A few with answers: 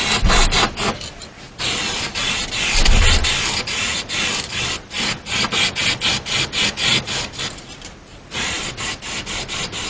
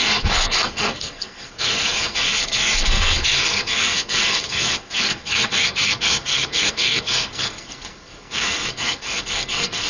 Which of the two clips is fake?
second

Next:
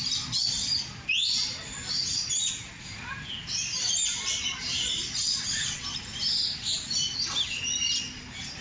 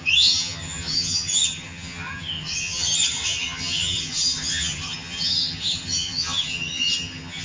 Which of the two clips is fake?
second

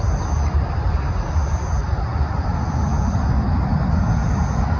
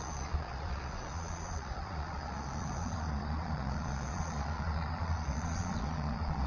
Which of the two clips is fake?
second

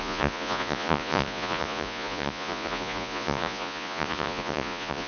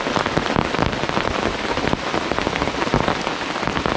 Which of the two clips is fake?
first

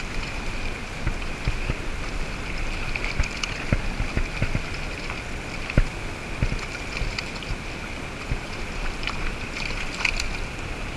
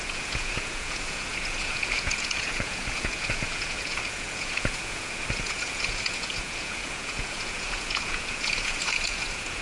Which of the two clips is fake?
second